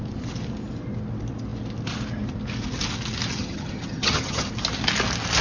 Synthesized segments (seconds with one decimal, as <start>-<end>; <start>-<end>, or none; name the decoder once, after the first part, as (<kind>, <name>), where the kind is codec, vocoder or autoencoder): 3.4-4.5 (vocoder, HiFi-GAN)